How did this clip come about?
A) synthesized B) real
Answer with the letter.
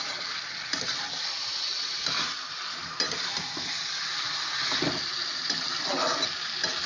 B